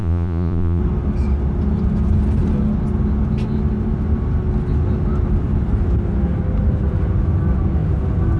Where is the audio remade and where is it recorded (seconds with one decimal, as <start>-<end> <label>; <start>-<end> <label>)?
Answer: 0.0-0.8 remade; 0.8-8.4 recorded